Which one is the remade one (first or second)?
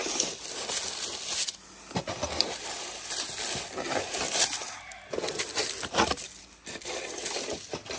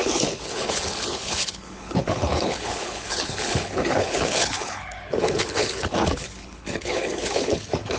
second